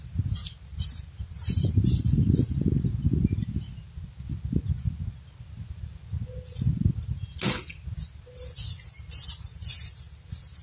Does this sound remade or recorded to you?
recorded